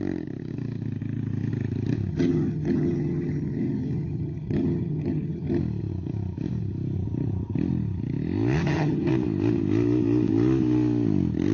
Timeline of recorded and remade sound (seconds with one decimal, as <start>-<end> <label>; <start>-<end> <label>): 0.0-2.1 recorded; 2.1-5.6 remade; 5.6-8.6 recorded; 8.6-9.1 remade; 9.1-11.5 recorded